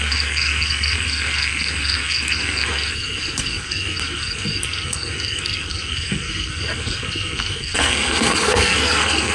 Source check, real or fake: fake